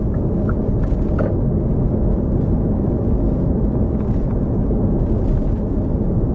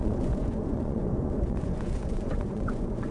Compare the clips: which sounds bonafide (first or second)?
first